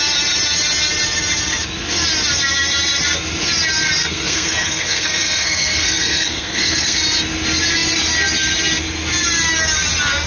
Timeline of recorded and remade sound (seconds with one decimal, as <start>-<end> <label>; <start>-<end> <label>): 0.0-4.0 recorded; 4.0-7.0 remade; 7.0-10.3 recorded